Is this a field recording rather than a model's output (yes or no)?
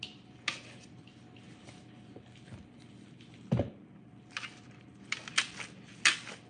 yes